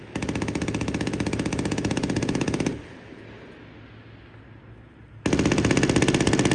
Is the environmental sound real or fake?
real